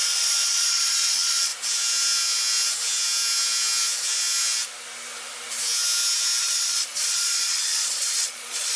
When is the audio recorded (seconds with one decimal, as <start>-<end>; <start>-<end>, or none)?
1.5-6.4